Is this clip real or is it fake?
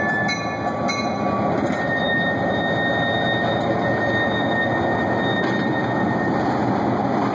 real